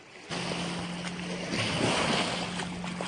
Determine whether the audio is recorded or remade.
recorded